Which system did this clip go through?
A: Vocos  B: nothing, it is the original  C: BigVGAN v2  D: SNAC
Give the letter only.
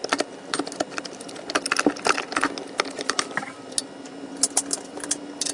B